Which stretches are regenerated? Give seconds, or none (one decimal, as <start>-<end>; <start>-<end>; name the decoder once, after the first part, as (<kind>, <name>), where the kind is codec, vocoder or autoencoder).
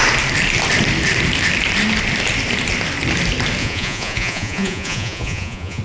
3.6-5.8 (vocoder, Vocos)